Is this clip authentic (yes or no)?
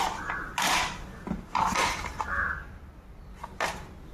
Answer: yes